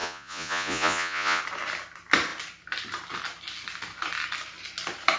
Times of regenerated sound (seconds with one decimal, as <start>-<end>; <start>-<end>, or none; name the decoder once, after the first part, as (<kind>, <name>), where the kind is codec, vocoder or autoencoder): 0.0-1.4 (vocoder, Vocos)